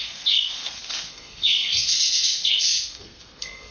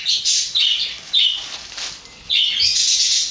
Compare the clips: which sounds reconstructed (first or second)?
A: first